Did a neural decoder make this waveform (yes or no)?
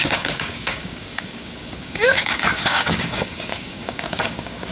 yes